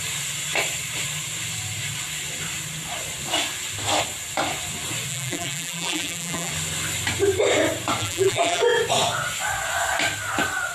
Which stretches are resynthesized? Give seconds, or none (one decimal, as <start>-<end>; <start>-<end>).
5.1-6.5; 8.0-8.6